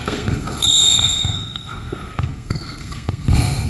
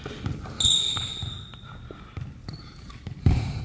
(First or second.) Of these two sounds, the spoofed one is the first